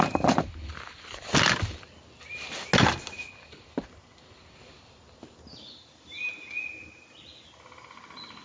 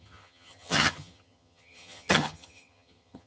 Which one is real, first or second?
first